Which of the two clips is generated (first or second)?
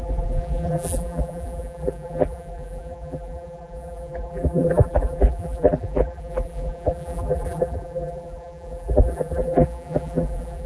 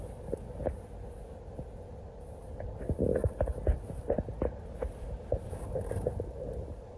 first